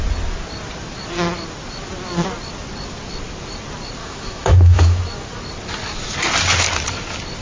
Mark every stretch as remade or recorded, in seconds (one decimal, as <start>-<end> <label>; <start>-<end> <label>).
0.0-4.0 recorded; 4.0-5.0 remade; 5.0-7.4 recorded